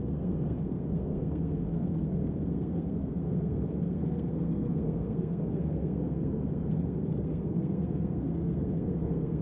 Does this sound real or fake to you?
fake